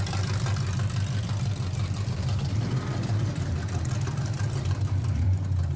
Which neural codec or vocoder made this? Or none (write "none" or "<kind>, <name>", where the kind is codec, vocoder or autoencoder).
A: vocoder, BigVGAN v2